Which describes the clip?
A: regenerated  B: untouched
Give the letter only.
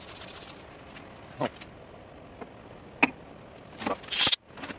B